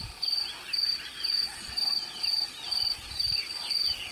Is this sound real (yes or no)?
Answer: yes